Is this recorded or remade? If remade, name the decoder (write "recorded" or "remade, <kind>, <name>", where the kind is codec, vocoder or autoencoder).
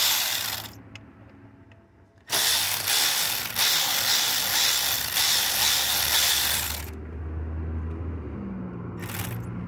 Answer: recorded